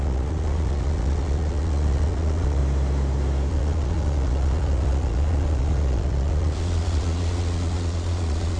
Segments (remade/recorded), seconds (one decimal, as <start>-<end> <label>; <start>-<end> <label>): 0.0-2.6 remade; 2.6-3.5 recorded; 3.5-8.6 remade